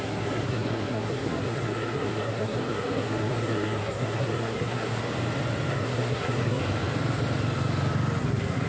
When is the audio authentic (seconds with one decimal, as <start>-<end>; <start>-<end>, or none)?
5.0-5.7; 6.6-8.2